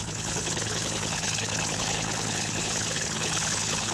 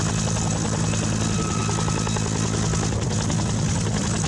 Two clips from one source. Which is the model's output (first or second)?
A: first